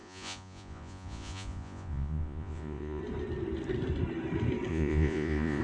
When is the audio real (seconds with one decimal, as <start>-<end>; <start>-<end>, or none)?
3.0-4.7